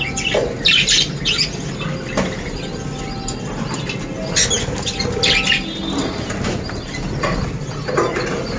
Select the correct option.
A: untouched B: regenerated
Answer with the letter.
A